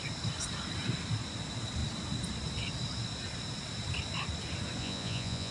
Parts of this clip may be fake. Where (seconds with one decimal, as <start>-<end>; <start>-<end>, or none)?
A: 4.8-5.5